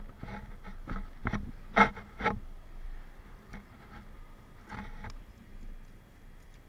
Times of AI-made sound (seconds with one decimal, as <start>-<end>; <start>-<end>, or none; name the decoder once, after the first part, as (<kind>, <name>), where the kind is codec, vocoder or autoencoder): none